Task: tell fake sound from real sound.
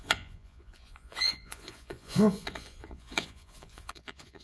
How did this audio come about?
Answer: fake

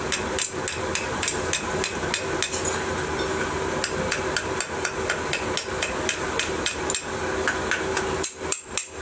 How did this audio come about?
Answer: real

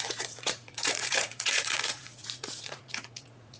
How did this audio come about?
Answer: fake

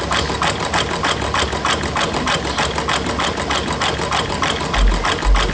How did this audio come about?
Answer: real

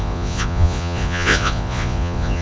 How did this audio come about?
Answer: fake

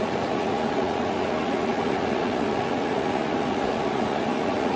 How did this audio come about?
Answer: fake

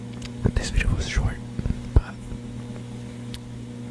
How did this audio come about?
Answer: real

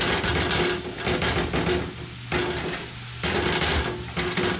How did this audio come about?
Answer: real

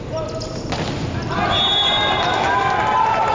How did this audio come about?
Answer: real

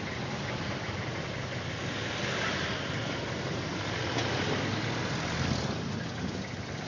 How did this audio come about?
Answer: real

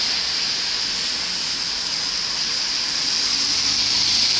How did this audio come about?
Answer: real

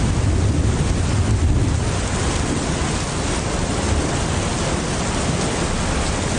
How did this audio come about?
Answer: real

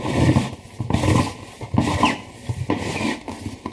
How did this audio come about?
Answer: real